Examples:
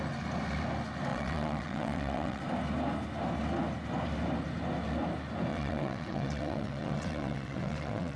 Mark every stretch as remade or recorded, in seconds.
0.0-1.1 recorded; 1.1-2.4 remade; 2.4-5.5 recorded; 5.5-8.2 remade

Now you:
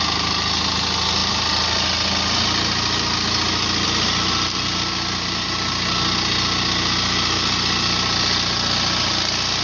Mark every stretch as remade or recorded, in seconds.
0.0-9.6 recorded

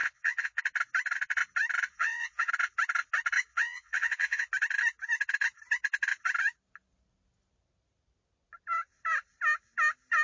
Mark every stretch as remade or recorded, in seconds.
0.0-0.6 remade; 0.6-1.9 recorded; 1.9-2.5 remade; 2.5-3.5 recorded; 3.5-4.5 remade; 4.5-10.2 recorded